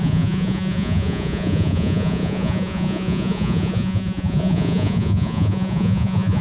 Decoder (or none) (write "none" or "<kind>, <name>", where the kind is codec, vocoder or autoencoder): vocoder, Vocos